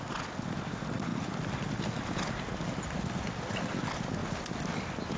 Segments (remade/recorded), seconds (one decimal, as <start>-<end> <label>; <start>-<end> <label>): 0.0-5.2 recorded